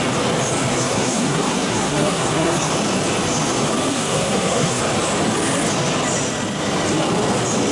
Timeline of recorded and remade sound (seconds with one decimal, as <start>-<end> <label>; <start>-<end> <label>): 0.0-0.7 recorded; 0.7-2.7 remade; 2.7-3.9 recorded; 3.9-4.8 remade; 4.8-7.7 recorded